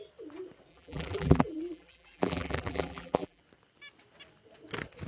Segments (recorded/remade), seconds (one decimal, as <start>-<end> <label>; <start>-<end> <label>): 0.0-0.7 recorded; 0.7-3.4 remade; 3.4-5.1 recorded